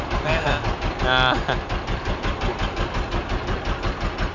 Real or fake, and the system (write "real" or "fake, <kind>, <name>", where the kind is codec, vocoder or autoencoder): real